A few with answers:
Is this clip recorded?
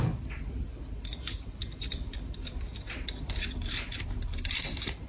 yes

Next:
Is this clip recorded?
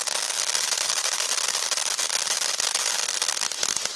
yes